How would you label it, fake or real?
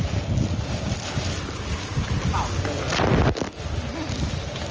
real